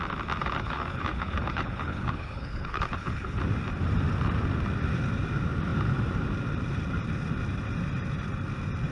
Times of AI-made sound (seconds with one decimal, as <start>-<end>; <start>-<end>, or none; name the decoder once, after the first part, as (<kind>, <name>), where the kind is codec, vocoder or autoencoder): 0.4-3.4 (codec, HILCodec)

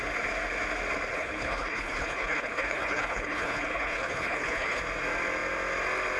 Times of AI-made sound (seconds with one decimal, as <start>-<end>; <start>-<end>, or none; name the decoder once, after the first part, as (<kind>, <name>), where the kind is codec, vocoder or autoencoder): 1.1-4.8 (codec, HILCodec)

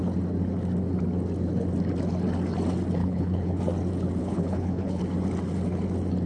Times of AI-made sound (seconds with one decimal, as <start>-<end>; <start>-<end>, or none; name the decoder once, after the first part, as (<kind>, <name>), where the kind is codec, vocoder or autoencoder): 3.0-3.6 (codec, HILCodec); 4.2-5.0